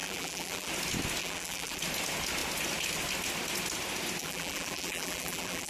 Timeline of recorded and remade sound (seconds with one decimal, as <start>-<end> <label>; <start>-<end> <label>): 0.0-0.7 remade; 0.7-1.2 recorded; 1.2-1.8 remade; 1.8-4.2 recorded; 4.2-5.7 remade